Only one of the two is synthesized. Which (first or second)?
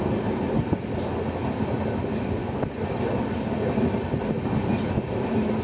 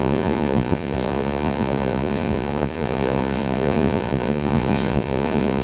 second